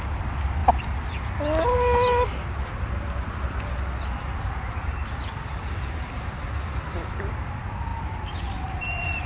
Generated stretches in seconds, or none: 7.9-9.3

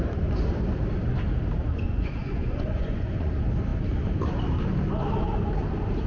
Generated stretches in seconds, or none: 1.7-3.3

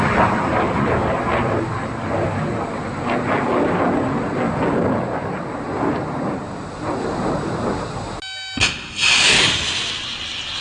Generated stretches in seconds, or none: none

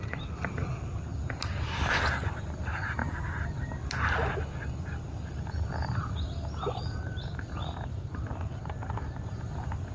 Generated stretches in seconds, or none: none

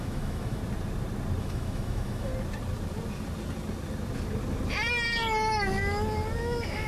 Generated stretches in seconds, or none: 0.0-0.6; 1.4-2.3; 6.4-6.9

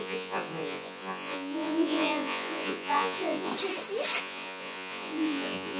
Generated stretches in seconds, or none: 0.0-3.5; 4.2-5.8

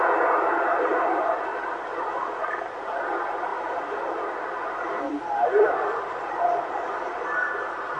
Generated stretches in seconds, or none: none